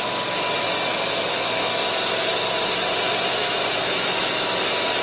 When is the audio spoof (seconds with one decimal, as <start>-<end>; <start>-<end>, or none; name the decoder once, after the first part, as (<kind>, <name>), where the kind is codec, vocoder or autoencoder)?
0.9-1.7 (autoencoder, DAC-VAE); 3.4-4.6